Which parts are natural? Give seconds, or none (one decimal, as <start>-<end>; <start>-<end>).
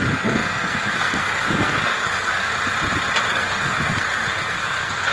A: 2.5-3.3